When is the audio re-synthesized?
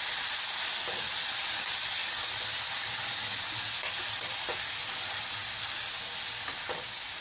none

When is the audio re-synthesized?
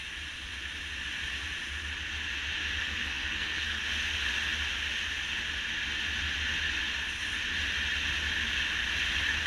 2.8-3.8 (codec, SNAC)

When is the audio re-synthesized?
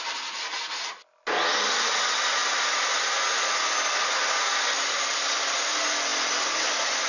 none